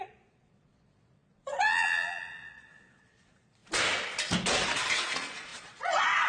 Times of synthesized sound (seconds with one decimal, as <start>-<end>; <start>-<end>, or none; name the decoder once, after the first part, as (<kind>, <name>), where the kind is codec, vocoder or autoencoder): 0.0-3.6 (vocoder, Vocos); 4.9-6.3